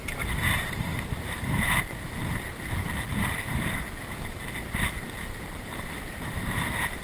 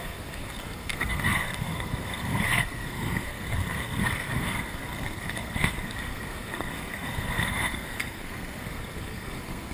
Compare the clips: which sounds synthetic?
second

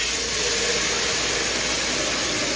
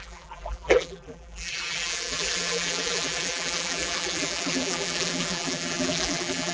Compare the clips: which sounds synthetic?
second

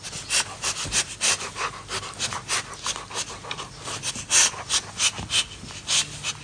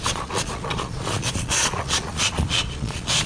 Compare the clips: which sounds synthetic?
second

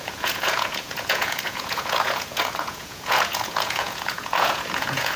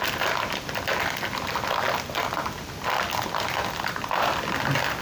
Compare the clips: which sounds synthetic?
first